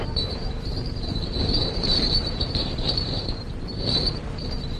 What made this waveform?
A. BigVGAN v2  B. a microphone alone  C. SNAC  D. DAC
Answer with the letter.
A